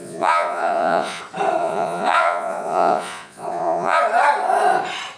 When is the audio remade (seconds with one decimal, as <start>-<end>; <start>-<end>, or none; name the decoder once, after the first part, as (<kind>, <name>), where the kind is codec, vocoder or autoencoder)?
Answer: 0.0-1.2 (vocoder, Vocos); 1.6-4.0